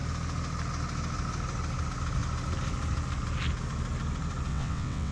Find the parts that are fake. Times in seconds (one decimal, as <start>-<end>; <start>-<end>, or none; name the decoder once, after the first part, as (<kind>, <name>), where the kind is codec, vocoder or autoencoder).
4.5-5.1 (vocoder, WaveNeXt)